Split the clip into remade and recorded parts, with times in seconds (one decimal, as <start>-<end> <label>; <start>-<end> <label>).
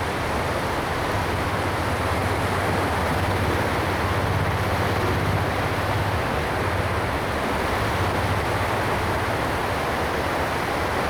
0.0-11.1 recorded